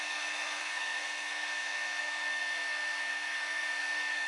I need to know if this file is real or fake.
fake